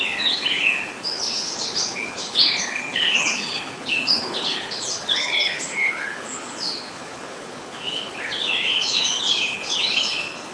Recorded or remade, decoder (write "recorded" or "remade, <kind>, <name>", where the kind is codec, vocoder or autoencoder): remade, codec, HILCodec